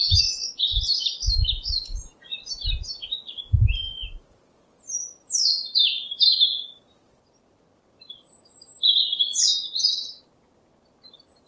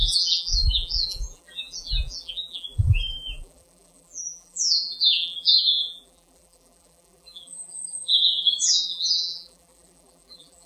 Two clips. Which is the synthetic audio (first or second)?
second